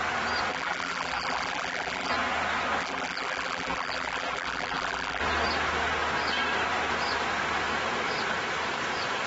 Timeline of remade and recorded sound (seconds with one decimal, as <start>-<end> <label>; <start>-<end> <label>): 0.0-0.5 recorded; 0.5-2.1 remade; 2.1-2.8 recorded; 2.8-5.2 remade; 5.2-9.3 recorded